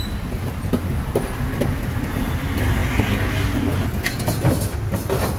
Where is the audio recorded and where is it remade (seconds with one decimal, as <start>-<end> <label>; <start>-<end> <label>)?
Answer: 0.0-5.4 recorded